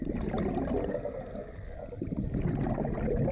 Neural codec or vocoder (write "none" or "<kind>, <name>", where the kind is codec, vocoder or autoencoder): none